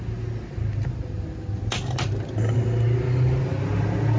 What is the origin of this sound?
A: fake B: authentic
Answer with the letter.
B